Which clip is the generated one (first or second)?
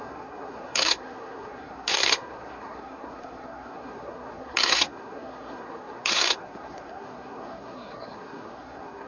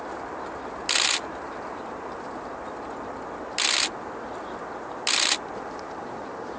first